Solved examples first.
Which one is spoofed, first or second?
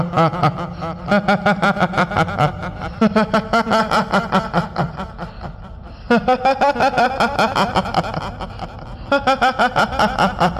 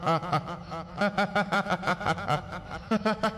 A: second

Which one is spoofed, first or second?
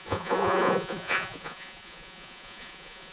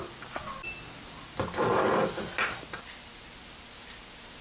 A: first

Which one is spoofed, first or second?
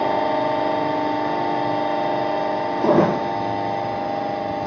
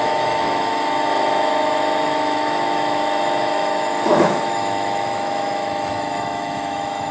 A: second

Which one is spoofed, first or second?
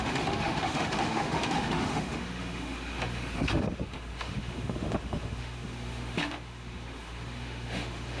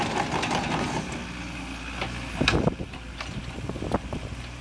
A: first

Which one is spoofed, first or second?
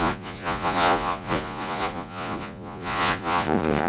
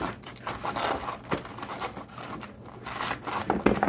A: first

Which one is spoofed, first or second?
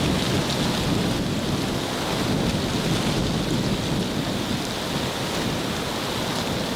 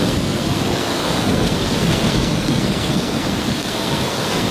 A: second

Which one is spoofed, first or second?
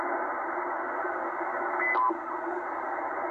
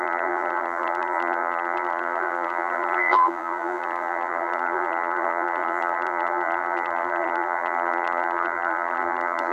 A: second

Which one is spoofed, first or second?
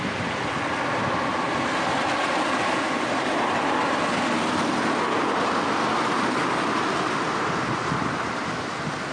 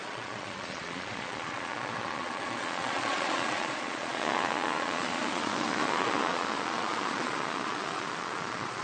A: second